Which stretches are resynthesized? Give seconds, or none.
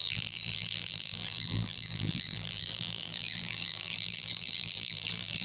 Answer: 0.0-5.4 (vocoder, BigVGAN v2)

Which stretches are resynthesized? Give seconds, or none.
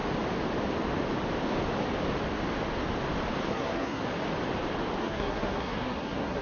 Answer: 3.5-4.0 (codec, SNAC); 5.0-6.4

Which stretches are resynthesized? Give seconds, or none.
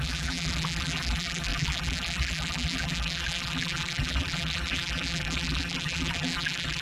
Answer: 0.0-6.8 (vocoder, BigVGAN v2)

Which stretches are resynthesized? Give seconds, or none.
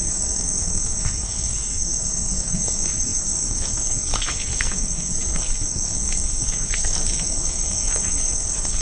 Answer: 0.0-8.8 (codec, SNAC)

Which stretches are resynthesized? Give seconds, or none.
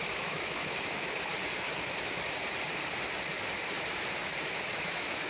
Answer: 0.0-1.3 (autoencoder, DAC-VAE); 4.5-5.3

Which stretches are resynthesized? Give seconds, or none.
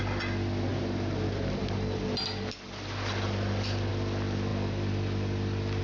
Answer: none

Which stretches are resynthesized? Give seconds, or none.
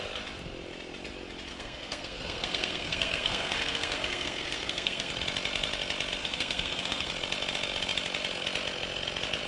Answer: 1.5-5.1 (codec, SNAC); 6.2-7.1